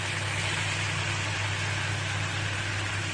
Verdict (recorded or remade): recorded